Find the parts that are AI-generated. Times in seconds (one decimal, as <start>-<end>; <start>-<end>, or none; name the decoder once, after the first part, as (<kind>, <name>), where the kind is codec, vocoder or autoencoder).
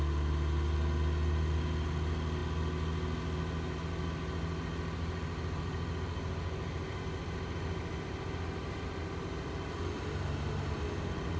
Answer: none